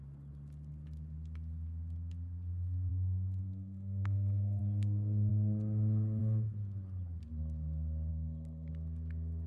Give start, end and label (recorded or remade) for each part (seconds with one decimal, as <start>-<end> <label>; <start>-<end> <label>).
0.0-2.9 recorded; 2.9-4.6 remade; 4.6-8.1 recorded; 8.1-8.7 remade; 8.7-9.5 recorded